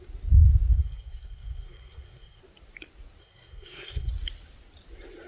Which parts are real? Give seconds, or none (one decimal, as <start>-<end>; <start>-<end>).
0.0-0.7; 2.4-3.2; 4.1-5.3